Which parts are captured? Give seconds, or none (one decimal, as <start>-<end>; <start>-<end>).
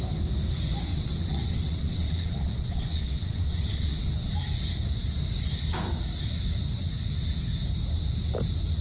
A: 0.0-0.9; 4.3-8.8